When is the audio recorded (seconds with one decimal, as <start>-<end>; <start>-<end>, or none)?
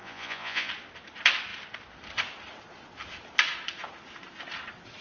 0.7-5.0